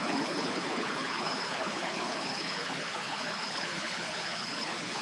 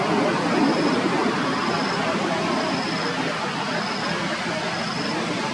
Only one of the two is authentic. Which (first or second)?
second